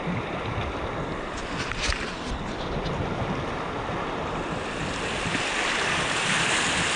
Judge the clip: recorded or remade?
recorded